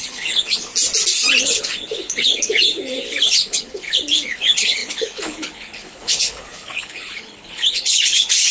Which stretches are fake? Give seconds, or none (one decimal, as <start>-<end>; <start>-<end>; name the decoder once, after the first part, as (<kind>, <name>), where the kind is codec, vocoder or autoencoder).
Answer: 0.0-0.7 (codec, HILCodec); 1.4-8.5